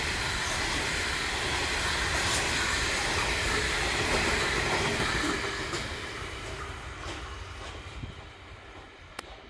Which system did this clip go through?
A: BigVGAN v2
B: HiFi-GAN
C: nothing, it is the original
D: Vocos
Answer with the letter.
C